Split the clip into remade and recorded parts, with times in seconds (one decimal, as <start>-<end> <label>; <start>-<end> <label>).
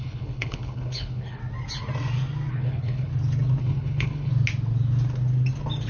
0.0-1.4 remade; 1.4-2.5 recorded; 2.5-3.1 remade; 3.1-3.6 recorded; 3.6-4.3 remade; 4.3-5.9 recorded